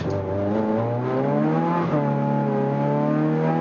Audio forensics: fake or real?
real